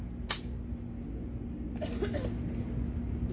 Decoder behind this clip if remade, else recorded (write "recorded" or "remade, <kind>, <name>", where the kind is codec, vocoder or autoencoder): recorded